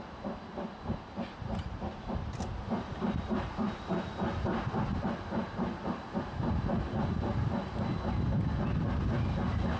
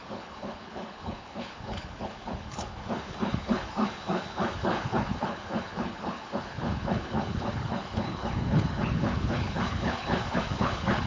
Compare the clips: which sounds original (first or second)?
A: first